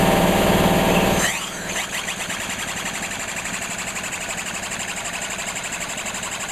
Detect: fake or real real